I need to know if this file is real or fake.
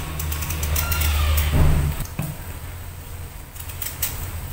real